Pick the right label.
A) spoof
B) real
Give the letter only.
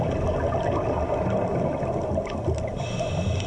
B